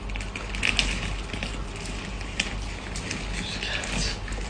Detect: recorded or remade recorded